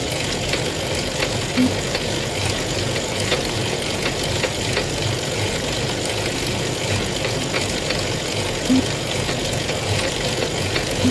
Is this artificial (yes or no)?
yes